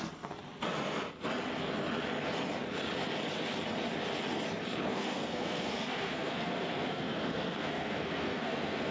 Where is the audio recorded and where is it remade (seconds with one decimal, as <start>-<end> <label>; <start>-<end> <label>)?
0.0-4.9 recorded; 4.9-8.9 remade